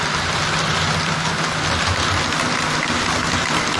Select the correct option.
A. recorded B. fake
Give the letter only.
A